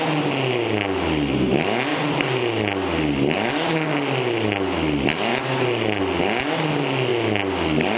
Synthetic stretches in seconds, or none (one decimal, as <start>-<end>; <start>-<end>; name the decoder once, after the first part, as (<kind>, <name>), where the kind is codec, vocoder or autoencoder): none